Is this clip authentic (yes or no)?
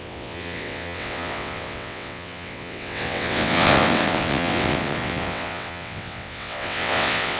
no